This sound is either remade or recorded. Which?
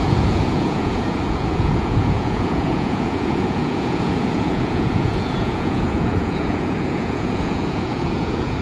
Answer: remade